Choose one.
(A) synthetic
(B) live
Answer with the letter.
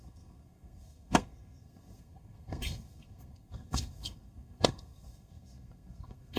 A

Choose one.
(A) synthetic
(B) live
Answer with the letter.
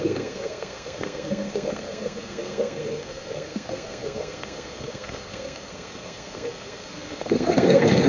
A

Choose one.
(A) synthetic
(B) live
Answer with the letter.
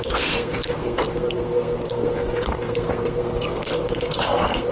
A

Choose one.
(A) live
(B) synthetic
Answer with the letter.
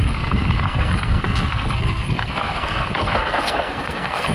B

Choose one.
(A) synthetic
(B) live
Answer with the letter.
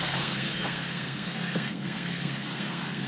A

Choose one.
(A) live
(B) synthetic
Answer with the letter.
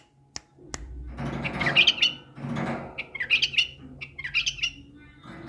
A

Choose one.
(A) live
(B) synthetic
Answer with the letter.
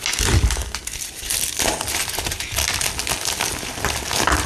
A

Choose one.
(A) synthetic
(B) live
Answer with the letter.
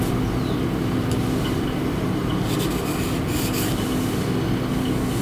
B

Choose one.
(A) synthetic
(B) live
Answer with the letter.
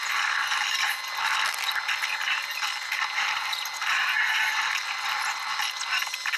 B